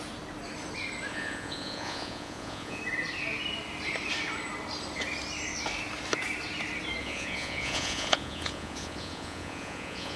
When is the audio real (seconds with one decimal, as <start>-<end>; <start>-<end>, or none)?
0.0-1.1; 2.8-7.0